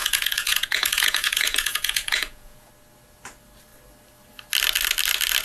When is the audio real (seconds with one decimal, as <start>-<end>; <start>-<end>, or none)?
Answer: 2.7-5.4

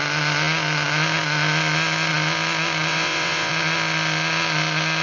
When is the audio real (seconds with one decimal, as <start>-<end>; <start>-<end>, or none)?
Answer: 0.0-2.9; 3.5-5.0

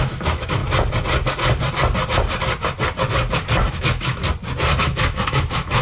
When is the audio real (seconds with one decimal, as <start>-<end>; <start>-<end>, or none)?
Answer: 0.6-3.7; 4.2-4.8

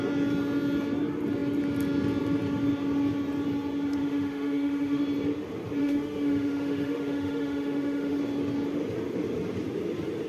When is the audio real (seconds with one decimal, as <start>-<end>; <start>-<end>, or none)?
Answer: 0.0-4.0; 5.0-5.8; 8.2-10.3

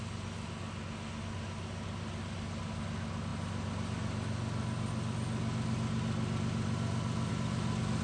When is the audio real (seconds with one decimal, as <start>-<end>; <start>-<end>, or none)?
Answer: 0.0-8.0